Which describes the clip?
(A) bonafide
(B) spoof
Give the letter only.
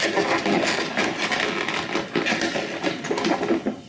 A